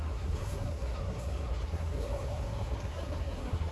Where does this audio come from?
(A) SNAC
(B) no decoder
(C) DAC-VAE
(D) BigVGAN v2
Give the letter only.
A